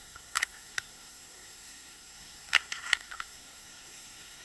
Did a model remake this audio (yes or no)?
yes